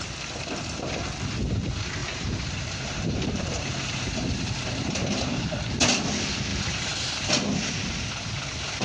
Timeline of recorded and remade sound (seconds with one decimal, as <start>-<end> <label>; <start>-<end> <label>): 0.0-2.0 recorded; 2.0-5.4 remade; 5.4-6.5 recorded; 6.5-7.3 remade; 7.3-8.8 recorded